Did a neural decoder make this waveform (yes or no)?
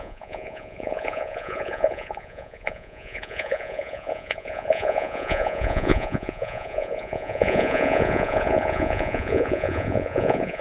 yes